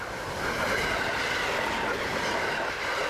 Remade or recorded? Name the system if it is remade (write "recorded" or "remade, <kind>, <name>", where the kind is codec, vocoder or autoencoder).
recorded